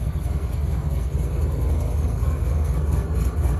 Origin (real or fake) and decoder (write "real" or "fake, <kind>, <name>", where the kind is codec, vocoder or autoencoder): fake, codec, SNAC